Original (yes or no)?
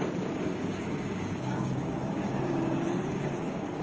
no